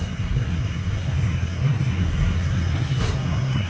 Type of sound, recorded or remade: remade